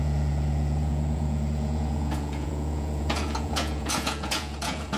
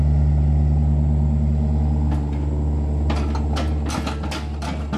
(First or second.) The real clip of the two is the second